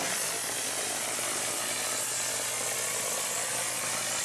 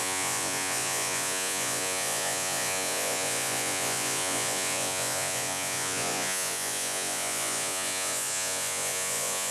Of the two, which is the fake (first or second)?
second